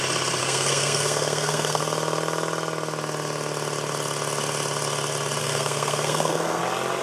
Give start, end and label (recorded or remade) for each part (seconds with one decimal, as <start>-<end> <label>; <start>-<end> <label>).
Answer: 0.0-0.4 recorded; 0.4-1.8 remade; 1.8-5.4 recorded; 5.4-6.6 remade; 6.6-7.0 recorded